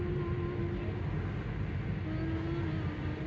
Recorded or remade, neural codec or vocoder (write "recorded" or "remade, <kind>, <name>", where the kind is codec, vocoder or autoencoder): recorded